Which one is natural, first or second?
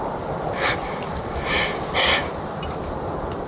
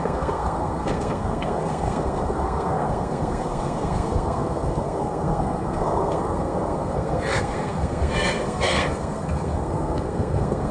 first